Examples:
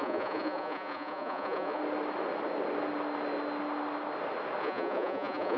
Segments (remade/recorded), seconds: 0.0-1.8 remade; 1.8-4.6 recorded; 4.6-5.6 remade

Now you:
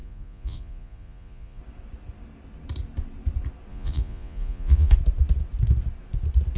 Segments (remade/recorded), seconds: 0.0-1.6 remade; 1.6-3.7 recorded; 3.7-4.9 remade; 4.9-6.6 recorded

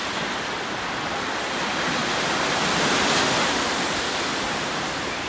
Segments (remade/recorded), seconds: 0.0-5.3 recorded

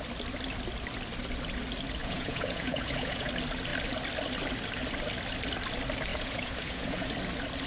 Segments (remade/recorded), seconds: 0.0-2.0 recorded; 2.0-3.3 remade; 3.3-6.1 recorded; 6.1-7.1 remade; 7.1-7.7 recorded

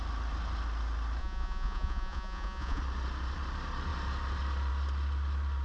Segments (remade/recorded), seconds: 0.0-1.2 recorded; 1.2-2.8 remade; 2.8-5.6 recorded

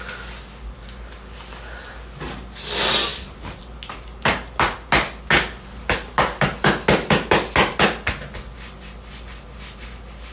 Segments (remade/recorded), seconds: 0.0-10.3 recorded

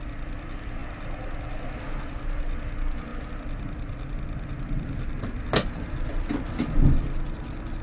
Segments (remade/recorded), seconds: 0.0-7.8 recorded